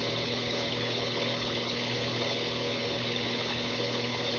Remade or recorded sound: remade